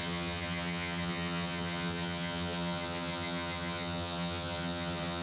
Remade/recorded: remade